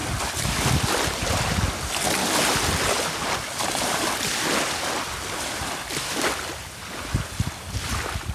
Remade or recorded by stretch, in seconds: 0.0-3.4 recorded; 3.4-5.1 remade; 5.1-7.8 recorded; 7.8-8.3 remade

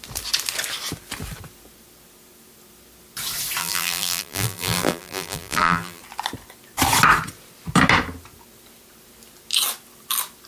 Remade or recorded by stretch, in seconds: 0.0-3.6 recorded; 3.6-6.0 remade; 6.0-10.5 recorded

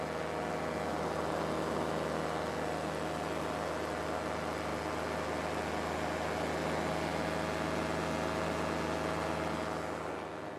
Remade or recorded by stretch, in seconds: 0.0-10.6 recorded